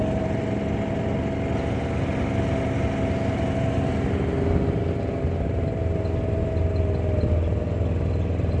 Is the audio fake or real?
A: real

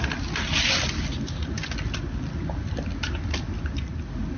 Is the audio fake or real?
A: real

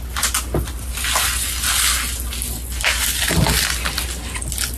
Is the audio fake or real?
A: real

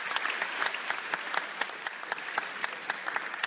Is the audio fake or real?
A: real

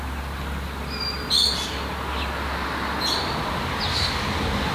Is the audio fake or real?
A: fake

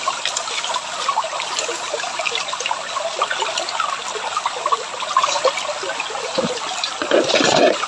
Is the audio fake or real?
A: real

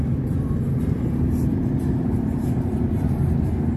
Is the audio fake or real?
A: fake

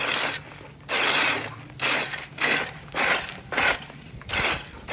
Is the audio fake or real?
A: real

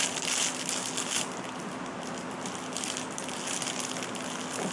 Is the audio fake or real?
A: real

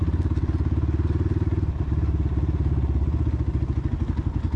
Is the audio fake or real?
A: real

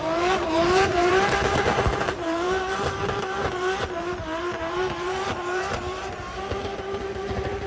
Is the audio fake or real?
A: fake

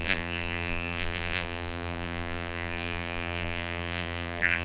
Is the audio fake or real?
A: fake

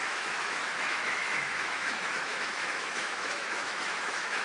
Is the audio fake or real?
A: fake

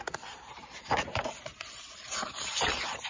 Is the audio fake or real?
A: fake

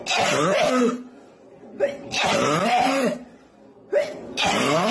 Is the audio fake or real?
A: real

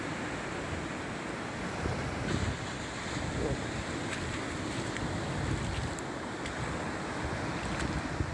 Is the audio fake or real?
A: real